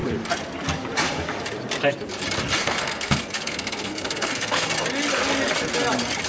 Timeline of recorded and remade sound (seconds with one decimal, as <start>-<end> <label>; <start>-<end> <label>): 0.0-2.6 recorded; 2.6-4.7 remade; 4.7-6.3 recorded